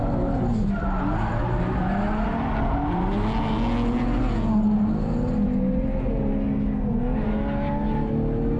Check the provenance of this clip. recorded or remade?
recorded